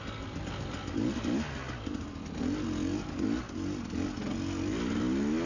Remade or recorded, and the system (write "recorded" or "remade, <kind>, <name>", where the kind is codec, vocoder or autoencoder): recorded